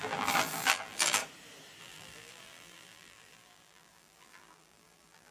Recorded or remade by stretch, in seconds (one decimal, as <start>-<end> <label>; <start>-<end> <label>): 0.0-1.2 remade; 1.2-1.8 recorded; 1.8-5.3 remade

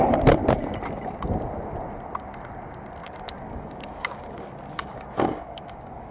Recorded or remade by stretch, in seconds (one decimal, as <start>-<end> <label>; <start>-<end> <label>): 0.0-3.0 recorded; 3.0-6.1 remade